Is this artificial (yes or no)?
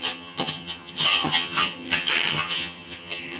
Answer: yes